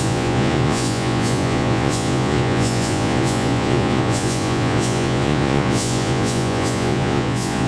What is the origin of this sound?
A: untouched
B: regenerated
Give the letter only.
B